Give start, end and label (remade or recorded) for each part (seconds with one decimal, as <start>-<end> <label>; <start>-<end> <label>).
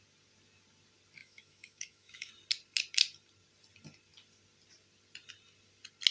0.0-1.2 recorded; 1.2-2.3 remade; 2.3-6.1 recorded